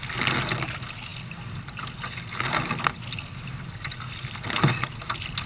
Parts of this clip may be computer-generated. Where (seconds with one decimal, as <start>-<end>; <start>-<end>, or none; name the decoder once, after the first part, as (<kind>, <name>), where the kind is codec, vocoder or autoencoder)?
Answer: none